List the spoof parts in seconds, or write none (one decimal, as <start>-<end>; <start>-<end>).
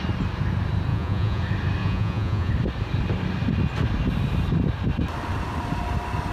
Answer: 0.9-1.4; 1.8-2.5